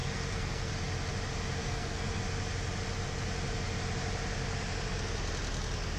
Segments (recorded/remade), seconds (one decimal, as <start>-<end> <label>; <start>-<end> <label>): 0.0-0.7 remade; 0.7-1.6 recorded; 1.6-2.2 remade; 2.2-6.0 recorded